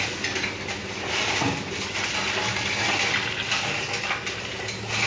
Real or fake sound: real